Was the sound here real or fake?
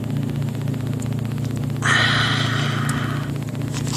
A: real